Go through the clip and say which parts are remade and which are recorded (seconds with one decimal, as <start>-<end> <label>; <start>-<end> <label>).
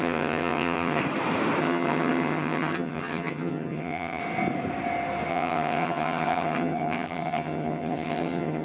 0.0-1.0 remade; 1.0-1.6 recorded; 1.6-4.2 remade; 4.2-5.3 recorded; 5.3-8.6 remade